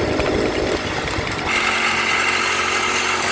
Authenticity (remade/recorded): recorded